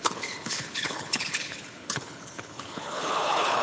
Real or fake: fake